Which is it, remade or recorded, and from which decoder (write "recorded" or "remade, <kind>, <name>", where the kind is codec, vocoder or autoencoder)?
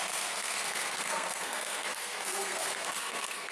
remade, codec, SNAC